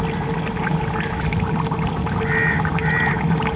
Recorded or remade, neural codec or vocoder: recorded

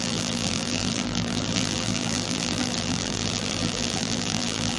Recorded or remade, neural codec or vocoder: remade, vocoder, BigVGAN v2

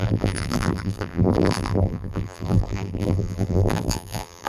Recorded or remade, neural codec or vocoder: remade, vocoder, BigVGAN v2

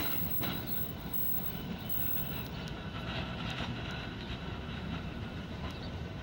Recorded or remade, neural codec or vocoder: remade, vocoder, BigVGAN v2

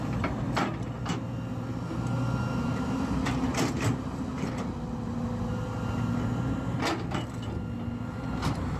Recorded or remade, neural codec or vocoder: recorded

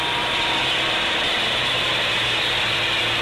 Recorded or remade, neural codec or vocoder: remade, vocoder, BigVGAN v2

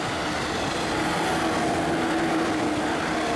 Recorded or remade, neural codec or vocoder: recorded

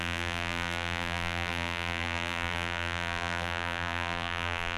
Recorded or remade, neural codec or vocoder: remade, vocoder, BigVGAN v2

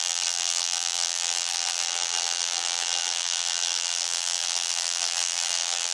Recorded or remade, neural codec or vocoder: remade, vocoder, BigVGAN v2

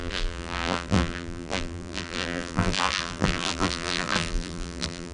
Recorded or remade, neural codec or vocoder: remade, vocoder, BigVGAN v2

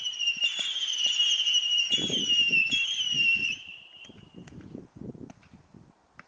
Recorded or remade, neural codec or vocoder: remade, vocoder, BigVGAN v2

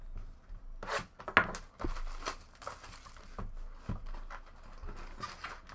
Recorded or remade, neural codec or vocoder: recorded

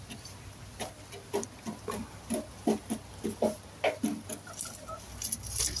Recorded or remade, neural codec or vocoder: recorded